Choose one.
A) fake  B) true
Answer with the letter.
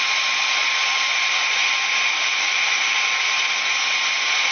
B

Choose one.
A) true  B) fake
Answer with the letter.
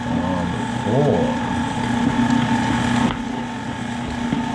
A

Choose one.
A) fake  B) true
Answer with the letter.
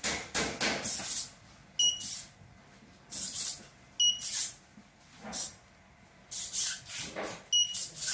B